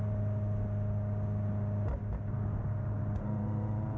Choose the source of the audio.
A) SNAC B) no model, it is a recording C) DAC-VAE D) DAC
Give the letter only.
B